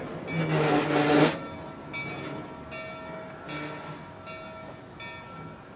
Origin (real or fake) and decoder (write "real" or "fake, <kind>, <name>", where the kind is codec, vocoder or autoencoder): real